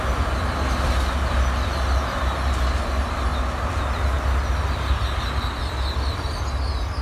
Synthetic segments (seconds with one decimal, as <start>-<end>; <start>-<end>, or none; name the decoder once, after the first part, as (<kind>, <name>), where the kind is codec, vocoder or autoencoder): none